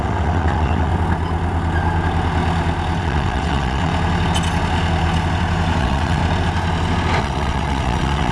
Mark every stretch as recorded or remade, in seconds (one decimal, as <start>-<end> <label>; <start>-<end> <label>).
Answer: 0.0-0.9 remade; 0.9-3.0 recorded; 3.0-3.9 remade; 3.9-5.8 recorded; 5.8-6.2 remade; 6.2-7.2 recorded; 7.2-8.3 remade